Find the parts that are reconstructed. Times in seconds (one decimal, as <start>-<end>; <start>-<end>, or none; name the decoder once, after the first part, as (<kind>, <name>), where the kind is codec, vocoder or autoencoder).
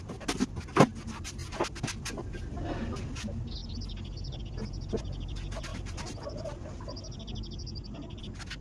none